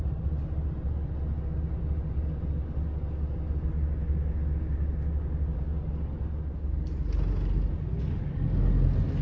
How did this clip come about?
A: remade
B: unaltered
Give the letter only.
B